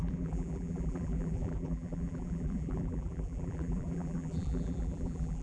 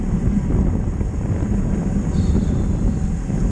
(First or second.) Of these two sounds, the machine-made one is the first